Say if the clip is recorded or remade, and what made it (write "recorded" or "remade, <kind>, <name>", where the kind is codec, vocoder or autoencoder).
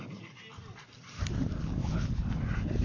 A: recorded